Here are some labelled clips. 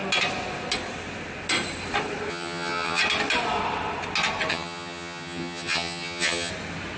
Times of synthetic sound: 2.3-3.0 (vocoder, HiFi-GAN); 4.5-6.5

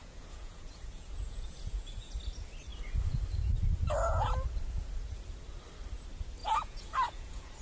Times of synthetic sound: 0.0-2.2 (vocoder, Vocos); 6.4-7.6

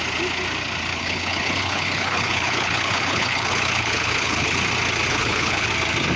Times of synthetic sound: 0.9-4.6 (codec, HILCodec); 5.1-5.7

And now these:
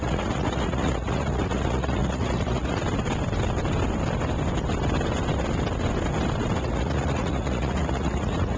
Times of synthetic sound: 0.0-2.8 (vocoder, Vocos); 6.6-8.6

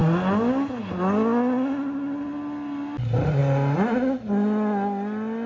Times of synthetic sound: none

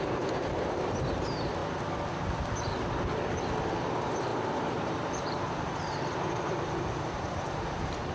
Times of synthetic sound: 0.0-1.6 (vocoder, BigVGAN v2); 3.9-8.1

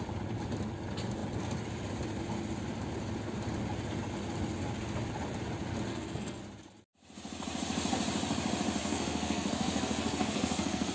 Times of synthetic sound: 5.9-6.4 (codec, SNAC); 8.8-10.9

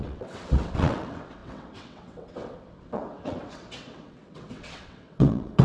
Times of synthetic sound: 0.0-5.6 (vocoder, WaveNeXt)